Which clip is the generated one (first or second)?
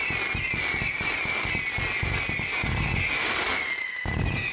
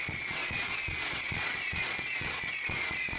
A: second